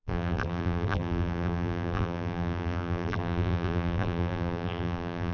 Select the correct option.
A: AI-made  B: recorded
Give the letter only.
A